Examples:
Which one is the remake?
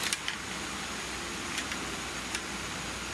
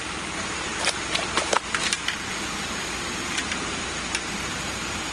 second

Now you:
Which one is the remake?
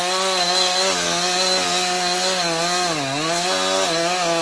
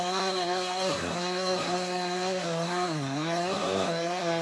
second